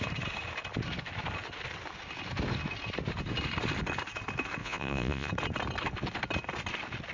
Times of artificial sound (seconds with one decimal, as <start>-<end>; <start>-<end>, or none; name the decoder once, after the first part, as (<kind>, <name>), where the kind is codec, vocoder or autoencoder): 4.6-5.3 (vocoder, Vocos)